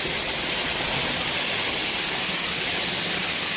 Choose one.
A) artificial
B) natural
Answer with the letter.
B